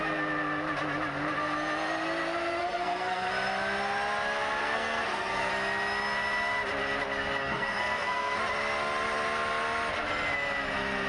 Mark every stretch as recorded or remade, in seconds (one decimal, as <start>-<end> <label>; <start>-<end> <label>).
0.0-2.6 recorded; 2.6-3.3 remade; 3.3-4.6 recorded; 4.6-5.5 remade; 5.5-7.4 recorded; 7.4-8.4 remade; 8.4-11.1 recorded